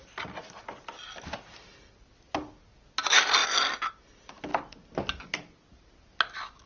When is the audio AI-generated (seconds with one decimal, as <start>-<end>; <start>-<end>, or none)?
none